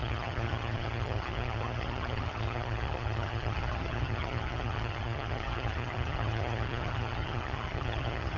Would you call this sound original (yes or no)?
no